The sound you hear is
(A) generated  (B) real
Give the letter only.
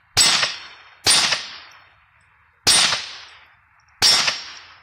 B